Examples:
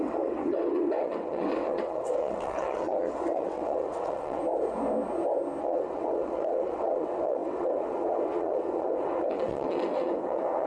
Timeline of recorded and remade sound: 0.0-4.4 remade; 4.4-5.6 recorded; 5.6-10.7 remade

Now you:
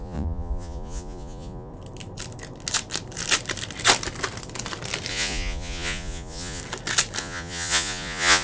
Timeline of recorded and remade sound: 0.0-1.7 remade; 1.7-5.1 recorded; 5.1-6.6 remade; 6.6-7.2 recorded; 7.2-8.4 remade

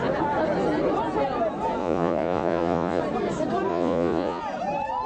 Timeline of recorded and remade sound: 0.0-1.8 recorded; 1.8-3.0 remade; 3.0-3.7 recorded; 3.7-4.4 remade; 4.4-5.1 recorded

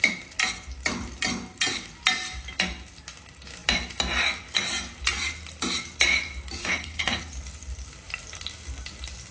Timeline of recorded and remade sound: 0.0-6.6 recorded; 6.6-7.2 remade; 7.2-9.3 recorded

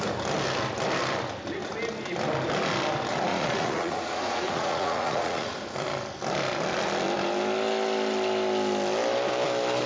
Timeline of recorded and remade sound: 0.0-3.3 recorded; 3.3-5.5 remade; 5.5-9.9 recorded

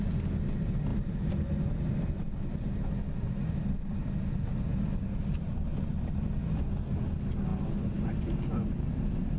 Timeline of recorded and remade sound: 0.0-9.4 recorded